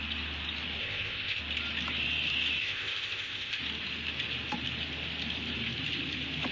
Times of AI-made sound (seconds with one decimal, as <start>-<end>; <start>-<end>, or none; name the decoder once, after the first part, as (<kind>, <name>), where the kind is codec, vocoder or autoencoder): 0.8-1.4 (codec, ZipCodec); 2.6-3.6